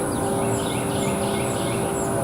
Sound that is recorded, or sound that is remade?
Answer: recorded